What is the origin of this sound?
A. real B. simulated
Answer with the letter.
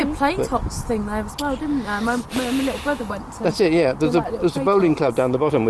A